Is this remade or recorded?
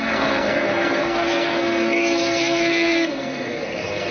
remade